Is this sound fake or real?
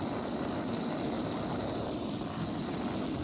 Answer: real